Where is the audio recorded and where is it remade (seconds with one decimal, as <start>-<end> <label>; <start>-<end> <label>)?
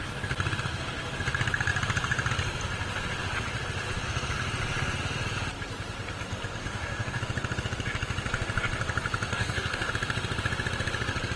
0.0-6.6 recorded; 6.6-7.2 remade; 7.2-9.3 recorded; 9.3-9.9 remade; 9.9-11.4 recorded